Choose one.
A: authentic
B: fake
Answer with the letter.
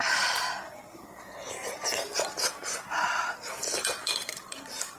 B